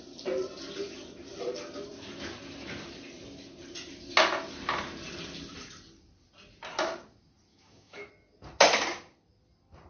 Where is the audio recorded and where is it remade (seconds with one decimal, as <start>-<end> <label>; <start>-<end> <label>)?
0.0-7.5 recorded; 7.5-8.1 remade; 8.1-9.9 recorded